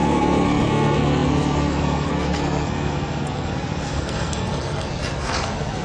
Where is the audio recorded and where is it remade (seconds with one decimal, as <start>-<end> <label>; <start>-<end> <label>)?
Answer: 0.0-5.8 remade